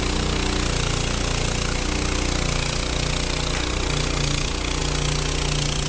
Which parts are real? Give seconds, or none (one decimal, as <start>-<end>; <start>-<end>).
0.0-5.9